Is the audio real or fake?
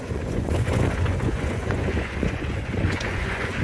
fake